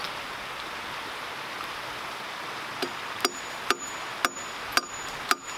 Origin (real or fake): real